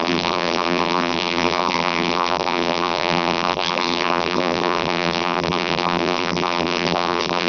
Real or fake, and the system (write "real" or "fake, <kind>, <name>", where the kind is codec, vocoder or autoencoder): fake, vocoder, BigVGAN v2